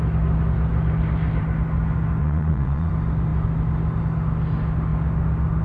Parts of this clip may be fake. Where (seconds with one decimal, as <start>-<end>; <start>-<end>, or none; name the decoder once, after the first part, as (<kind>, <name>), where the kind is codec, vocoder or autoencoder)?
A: 2.2-2.9 (vocoder, Vocos)